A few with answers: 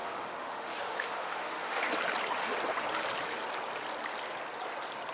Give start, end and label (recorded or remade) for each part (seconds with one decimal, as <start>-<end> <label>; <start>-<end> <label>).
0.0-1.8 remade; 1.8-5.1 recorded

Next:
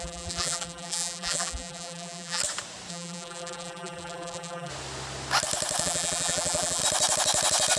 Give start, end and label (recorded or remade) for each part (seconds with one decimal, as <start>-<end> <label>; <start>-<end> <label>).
0.0-2.4 remade; 2.4-2.9 recorded; 2.9-4.7 remade; 4.7-5.8 recorded; 5.8-6.8 remade; 6.8-7.8 recorded

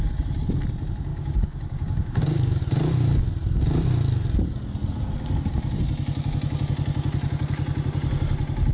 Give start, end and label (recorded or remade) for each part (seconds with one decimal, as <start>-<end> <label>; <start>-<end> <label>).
0.0-1.1 recorded; 1.1-2.6 remade; 2.6-8.7 recorded

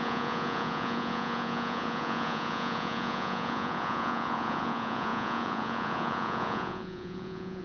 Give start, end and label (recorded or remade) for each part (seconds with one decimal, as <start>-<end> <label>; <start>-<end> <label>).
0.0-7.6 remade